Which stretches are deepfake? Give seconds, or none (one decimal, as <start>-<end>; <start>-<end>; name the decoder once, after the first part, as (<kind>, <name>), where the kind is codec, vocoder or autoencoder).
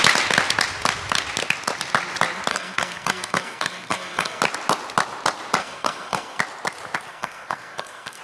2.5-4.4 (codec, SNAC); 5.6-6.4; 7.1-8.2